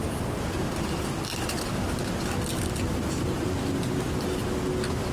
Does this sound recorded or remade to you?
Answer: recorded